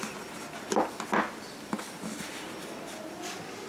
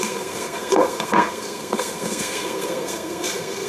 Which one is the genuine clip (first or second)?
first